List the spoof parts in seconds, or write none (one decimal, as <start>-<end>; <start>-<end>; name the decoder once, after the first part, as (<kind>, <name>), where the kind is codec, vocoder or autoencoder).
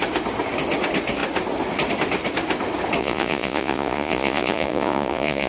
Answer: 3.0-5.5 (vocoder, Vocos)